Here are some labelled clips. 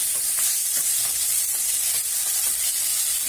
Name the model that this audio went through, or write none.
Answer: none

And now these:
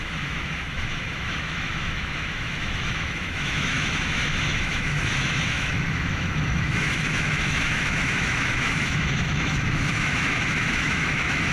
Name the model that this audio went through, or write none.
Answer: autoencoder, DAC-VAE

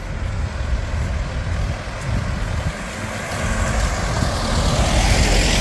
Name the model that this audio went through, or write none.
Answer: none